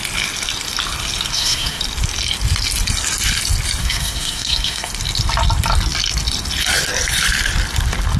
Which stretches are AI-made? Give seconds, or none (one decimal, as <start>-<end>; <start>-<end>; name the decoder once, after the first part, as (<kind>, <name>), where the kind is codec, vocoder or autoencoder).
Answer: 1.3-1.8 (codec, SNAC); 3.8-4.9